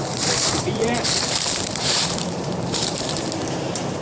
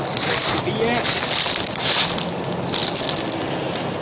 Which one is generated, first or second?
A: first